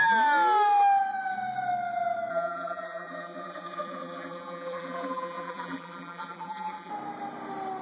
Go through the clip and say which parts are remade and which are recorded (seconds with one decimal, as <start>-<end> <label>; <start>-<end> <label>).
0.0-2.3 recorded; 2.3-6.9 remade; 6.9-7.8 recorded